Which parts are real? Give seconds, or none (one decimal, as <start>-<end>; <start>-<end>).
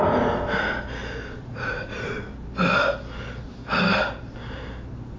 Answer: 0.0-1.4; 2.1-5.2